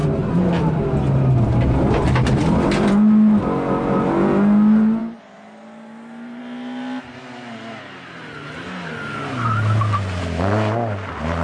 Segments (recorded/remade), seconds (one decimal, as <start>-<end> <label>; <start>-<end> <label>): 0.0-0.8 remade; 0.8-5.0 recorded; 5.0-6.4 remade; 6.4-11.4 recorded

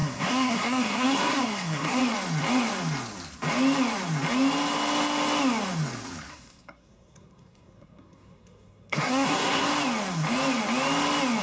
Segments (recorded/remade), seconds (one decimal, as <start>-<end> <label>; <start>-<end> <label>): 0.0-2.0 remade; 2.0-6.3 recorded; 6.3-9.7 remade; 9.7-11.4 recorded

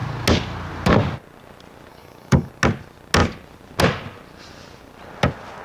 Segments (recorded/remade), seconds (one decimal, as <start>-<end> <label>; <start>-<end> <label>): 0.0-1.9 recorded; 1.9-2.5 remade; 2.5-5.6 recorded

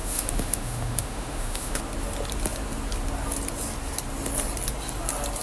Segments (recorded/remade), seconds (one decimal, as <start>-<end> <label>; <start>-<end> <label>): 0.0-1.8 remade; 1.8-5.4 recorded

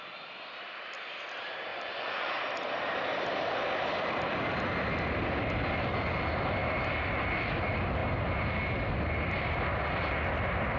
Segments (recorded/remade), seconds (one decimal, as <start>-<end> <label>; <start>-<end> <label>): 0.0-1.7 recorded; 1.7-2.4 remade; 2.4-10.8 recorded

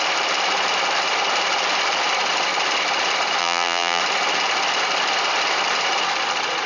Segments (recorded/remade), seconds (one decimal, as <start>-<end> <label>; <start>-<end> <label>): 0.0-3.4 recorded; 3.4-4.0 remade; 4.0-6.7 recorded

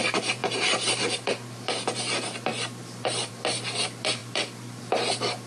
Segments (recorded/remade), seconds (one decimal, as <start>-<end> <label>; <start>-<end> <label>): 0.0-0.4 recorded; 0.4-1.1 remade; 1.1-2.5 recorded; 2.5-3.3 remade; 3.3-4.2 recorded; 4.2-4.8 remade; 4.8-5.5 recorded

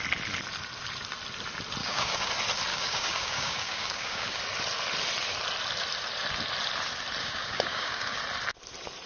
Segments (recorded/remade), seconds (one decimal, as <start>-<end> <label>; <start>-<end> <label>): 0.0-1.8 recorded; 1.8-2.3 remade; 2.3-2.7 recorded; 2.7-4.4 remade; 4.4-7.2 recorded; 7.2-8.2 remade; 8.2-9.1 recorded